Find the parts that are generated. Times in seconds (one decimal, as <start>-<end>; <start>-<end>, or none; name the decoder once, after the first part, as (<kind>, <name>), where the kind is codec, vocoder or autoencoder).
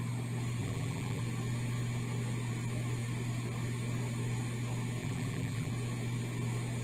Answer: 0.6-1.2 (vocoder, BigVGAN v2); 5.0-5.7